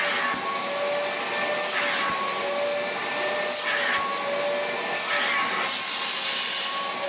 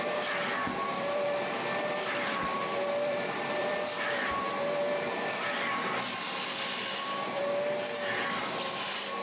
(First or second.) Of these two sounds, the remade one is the second